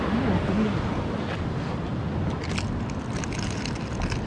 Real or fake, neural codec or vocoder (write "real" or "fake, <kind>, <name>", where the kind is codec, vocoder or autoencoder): real